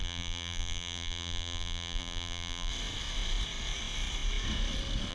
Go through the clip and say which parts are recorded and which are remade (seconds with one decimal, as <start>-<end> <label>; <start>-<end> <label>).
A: 0.0-2.7 remade; 2.7-5.1 recorded